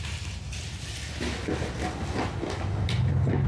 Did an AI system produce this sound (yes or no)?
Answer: no